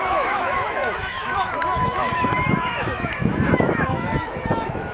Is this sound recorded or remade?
remade